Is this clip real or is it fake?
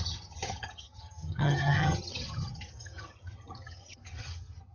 fake